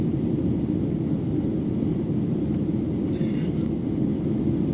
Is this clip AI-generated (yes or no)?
no